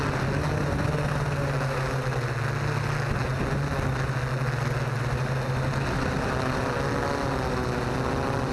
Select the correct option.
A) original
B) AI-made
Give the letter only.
A